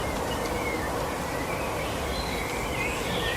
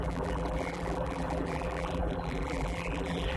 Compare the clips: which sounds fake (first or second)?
second